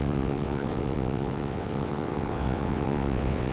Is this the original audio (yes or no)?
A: no